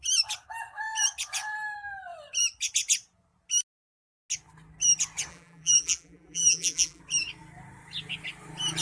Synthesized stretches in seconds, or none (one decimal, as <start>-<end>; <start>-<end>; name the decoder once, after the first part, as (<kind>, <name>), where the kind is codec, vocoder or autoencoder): 5.3-7.0 (vocoder, BigVGAN v2)